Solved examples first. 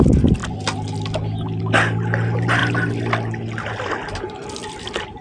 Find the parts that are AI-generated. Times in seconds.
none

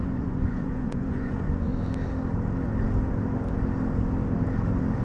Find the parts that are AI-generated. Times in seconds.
0.0-1.7 (vocoder, Vocos)

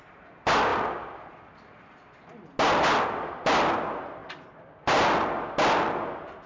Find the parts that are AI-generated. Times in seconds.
none